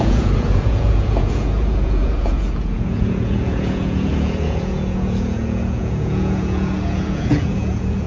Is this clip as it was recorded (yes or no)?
no